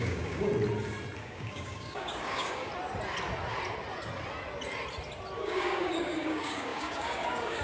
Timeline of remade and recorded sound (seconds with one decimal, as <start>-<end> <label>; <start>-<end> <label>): 0.0-0.5 remade; 0.5-1.2 recorded; 1.2-2.7 remade; 2.7-5.4 recorded; 5.4-7.6 remade